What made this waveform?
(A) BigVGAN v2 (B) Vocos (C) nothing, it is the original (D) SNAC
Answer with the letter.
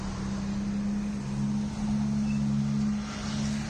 C